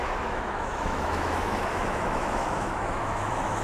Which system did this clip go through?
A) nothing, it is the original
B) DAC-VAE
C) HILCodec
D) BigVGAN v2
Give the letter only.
B